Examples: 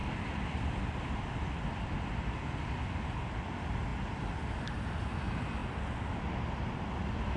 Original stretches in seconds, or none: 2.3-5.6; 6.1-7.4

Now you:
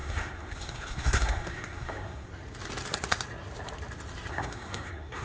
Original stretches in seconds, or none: 2.3-4.3

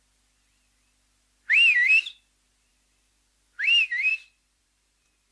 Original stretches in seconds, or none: 0.0-4.1

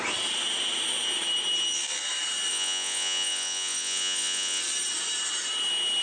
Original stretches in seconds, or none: 0.0-2.5; 4.6-6.0

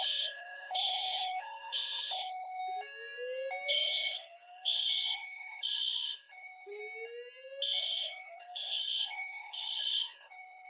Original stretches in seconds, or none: 2.6-3.7; 6.8-7.8

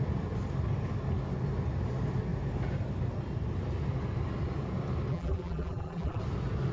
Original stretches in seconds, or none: 0.0-5.1; 6.2-6.7

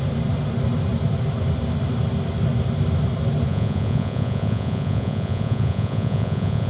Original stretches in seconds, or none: 0.0-3.5

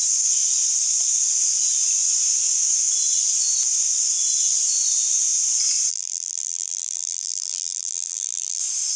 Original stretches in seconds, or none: 0.0-5.9; 8.6-9.0